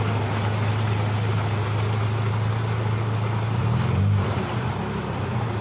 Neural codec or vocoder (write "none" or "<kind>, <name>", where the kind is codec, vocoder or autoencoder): none